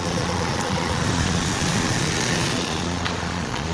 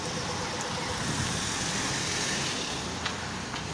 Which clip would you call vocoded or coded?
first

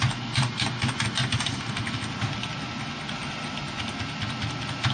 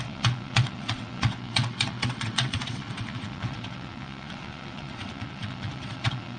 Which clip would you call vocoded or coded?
second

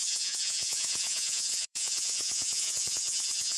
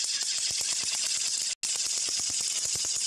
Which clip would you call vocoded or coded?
first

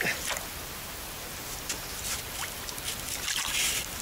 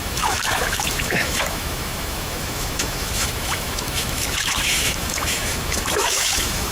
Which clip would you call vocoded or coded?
second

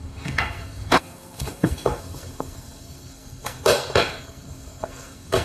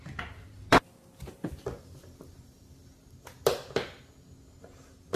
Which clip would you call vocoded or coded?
first